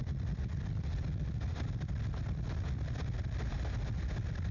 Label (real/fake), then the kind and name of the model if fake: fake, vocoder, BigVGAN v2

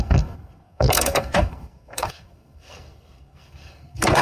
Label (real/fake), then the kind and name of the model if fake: fake, codec, SNAC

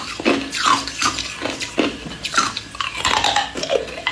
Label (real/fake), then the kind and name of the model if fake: real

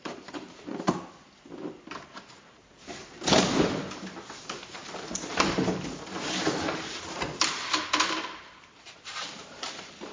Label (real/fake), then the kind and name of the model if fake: fake, vocoder, BigVGAN v2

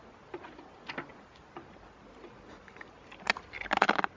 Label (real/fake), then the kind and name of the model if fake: real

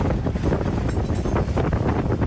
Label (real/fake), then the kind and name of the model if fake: real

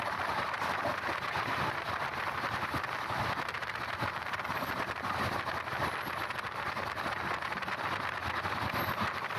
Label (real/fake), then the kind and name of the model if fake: real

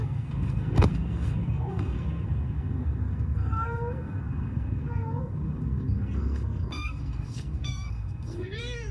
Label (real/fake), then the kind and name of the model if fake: fake, codec, SNAC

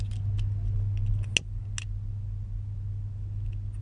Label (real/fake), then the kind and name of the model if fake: real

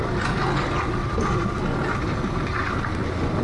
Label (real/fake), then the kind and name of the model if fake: real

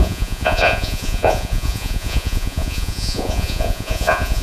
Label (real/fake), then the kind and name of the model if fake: fake, vocoder, Vocos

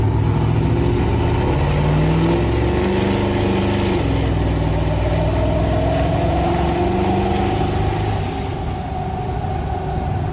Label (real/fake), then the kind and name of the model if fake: real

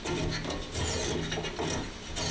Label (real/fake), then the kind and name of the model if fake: real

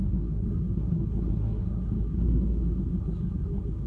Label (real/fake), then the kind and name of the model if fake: fake, codec, SNAC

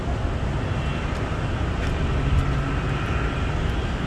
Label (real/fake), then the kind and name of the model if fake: real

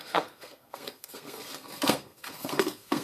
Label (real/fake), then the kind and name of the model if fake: fake, codec, SNAC